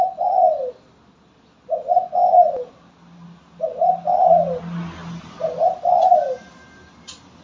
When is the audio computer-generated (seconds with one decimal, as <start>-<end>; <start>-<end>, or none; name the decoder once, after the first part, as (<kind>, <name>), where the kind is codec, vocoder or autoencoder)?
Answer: none